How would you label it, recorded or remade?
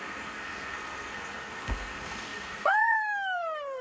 remade